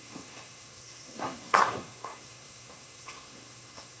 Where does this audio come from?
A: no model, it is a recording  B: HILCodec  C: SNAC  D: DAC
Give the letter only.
C